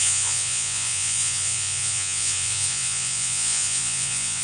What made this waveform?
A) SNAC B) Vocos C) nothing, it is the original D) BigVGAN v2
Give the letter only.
B